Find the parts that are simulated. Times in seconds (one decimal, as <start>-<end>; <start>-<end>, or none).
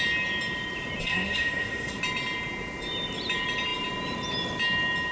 1.0-2.0